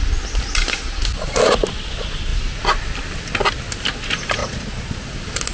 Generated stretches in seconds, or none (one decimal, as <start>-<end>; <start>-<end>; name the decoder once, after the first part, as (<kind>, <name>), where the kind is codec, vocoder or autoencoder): 4.4-5.1 (vocoder, Vocos)